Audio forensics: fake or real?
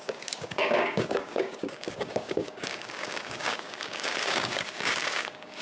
fake